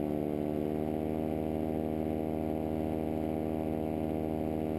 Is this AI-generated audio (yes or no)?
no